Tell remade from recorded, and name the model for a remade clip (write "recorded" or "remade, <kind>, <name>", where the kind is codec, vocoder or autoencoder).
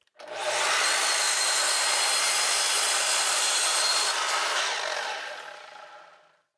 recorded